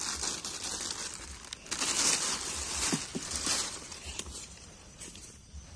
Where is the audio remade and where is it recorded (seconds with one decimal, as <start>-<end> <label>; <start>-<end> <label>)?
0.0-3.1 recorded; 3.1-5.8 remade